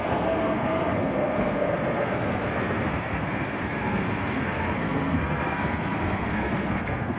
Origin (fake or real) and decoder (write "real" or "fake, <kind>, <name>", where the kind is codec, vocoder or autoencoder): fake, codec, SNAC